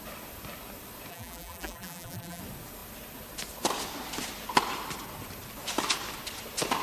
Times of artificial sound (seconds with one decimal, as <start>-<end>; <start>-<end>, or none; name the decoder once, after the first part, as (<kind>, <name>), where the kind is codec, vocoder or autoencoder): 1.1-2.4 (vocoder, BigVGAN v2)